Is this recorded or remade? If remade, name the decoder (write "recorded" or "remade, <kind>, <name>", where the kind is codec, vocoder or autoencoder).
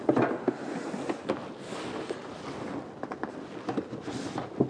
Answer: recorded